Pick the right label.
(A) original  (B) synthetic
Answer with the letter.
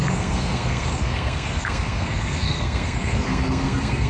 B